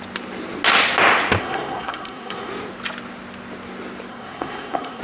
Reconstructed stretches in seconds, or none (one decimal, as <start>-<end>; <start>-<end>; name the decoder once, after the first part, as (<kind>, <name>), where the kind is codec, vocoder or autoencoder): 1.4-2.5 (codec, SNAC); 4.1-5.0